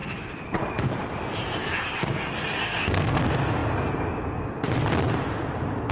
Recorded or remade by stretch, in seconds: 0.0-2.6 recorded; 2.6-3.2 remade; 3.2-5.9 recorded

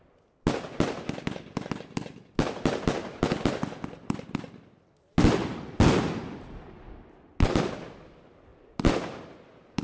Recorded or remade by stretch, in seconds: 0.0-9.8 recorded

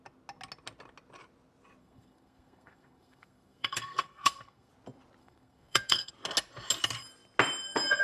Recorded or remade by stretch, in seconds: 0.0-1.8 recorded; 1.8-4.7 remade; 4.7-5.2 recorded; 5.2-6.1 remade; 6.1-8.0 recorded

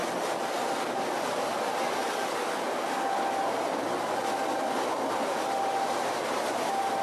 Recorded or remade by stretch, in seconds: 0.0-7.0 recorded

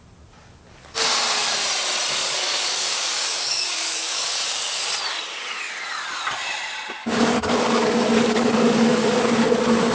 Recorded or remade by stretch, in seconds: 0.0-2.2 recorded; 2.2-4.9 remade; 4.9-7.0 recorded; 7.0-9.2 remade; 9.2-9.9 recorded